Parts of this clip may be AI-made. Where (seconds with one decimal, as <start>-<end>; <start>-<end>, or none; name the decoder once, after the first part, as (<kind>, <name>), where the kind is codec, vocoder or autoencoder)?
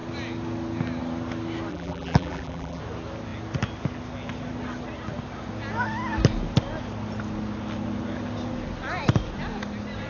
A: 1.7-2.8 (vocoder, BigVGAN v2)